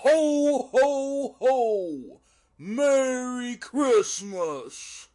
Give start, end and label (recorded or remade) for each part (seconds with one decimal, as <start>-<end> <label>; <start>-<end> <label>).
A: 0.0-0.6 remade; 0.6-3.7 recorded; 3.7-5.1 remade